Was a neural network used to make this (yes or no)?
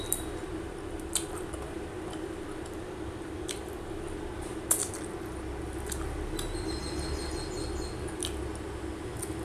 no